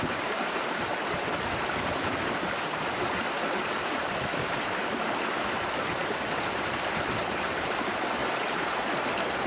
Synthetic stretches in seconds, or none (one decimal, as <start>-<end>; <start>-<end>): 0.0-8.2; 8.8-9.5